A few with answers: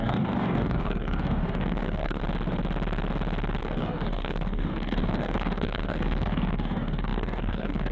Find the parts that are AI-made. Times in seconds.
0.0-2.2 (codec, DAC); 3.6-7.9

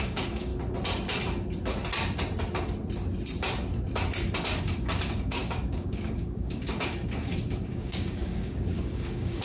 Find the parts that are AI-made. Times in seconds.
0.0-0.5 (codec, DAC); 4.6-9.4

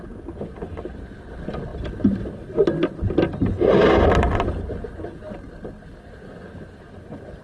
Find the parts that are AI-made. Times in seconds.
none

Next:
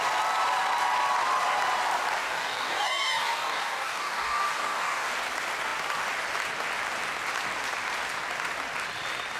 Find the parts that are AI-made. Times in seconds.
2.2-5.1 (codec, DAC)